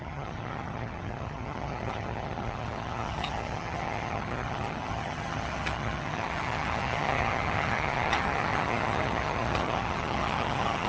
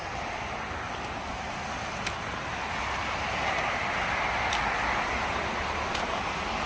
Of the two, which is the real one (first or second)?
second